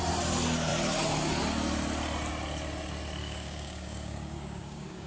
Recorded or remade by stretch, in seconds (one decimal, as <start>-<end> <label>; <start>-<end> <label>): 0.0-3.2 recorded; 3.2-5.1 remade

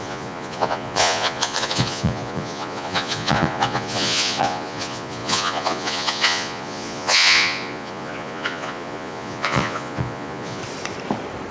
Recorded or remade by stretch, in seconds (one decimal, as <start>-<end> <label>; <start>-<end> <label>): 0.0-10.6 remade; 10.6-11.5 recorded

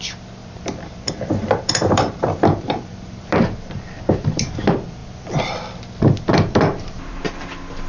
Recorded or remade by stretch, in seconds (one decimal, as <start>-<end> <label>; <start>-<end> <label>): 0.0-0.4 recorded; 0.4-4.6 remade; 4.6-5.0 recorded; 5.0-7.2 remade; 7.2-7.9 recorded

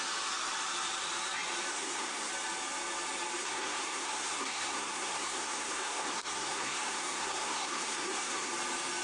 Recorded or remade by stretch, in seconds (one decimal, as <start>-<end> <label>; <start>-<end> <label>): 0.0-1.7 recorded; 1.7-2.3 remade; 2.3-3.4 recorded; 3.4-8.5 remade; 8.5-9.0 recorded

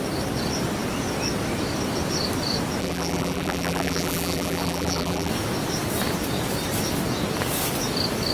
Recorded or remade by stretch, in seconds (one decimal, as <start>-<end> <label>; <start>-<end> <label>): 0.0-2.8 recorded; 2.8-5.3 remade; 5.3-8.3 recorded

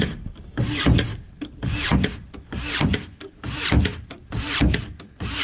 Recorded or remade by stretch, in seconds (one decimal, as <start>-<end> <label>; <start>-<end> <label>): 0.0-1.1 recorded; 1.1-4.3 remade; 4.3-5.4 recorded